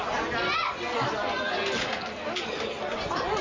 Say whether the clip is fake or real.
real